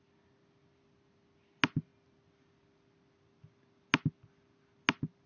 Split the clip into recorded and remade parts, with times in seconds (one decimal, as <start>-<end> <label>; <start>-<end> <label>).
0.0-5.3 recorded